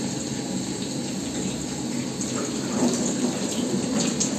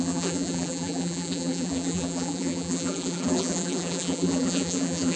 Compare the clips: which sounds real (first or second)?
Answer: first